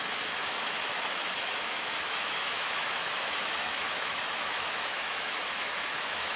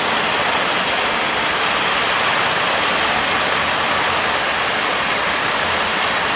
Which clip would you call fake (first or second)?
first